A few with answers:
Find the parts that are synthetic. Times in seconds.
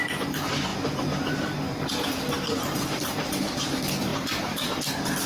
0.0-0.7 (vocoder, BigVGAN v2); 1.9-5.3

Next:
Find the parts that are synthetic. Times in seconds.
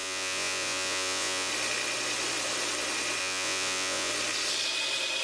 0.0-1.5 (vocoder, Vocos); 3.2-4.1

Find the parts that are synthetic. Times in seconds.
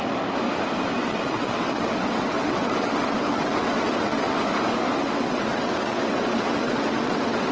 1.0-4.4 (vocoder, WaveNeXt); 5.0-7.5